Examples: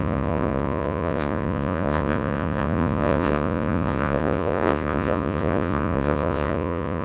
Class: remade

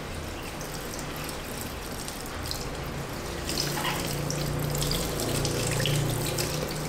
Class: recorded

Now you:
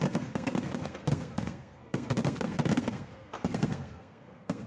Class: remade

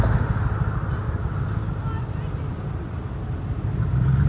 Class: recorded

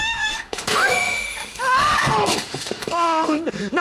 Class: remade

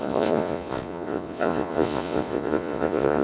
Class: remade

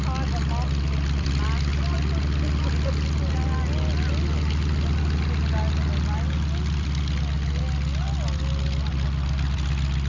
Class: recorded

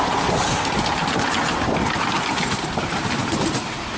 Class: recorded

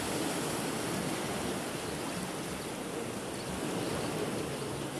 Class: recorded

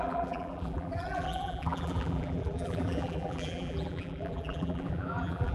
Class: remade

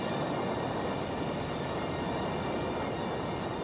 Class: recorded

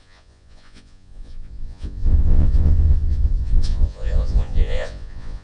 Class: remade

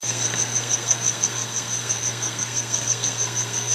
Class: remade